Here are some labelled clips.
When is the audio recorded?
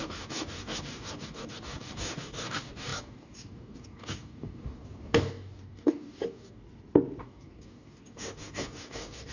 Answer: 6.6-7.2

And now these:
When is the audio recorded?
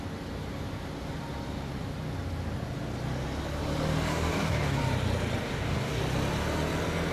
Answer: 0.0-4.1; 4.8-5.4; 6.0-7.1